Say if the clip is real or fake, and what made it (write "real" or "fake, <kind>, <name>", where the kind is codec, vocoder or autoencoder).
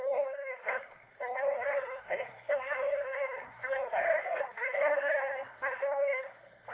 fake, codec, SNAC